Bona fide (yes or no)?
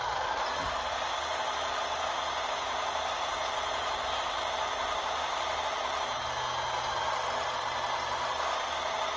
yes